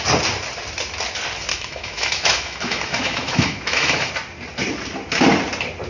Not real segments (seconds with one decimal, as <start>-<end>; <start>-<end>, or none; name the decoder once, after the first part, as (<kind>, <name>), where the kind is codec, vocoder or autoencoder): 1.5-4.1 (autoencoder, DAC-VAE)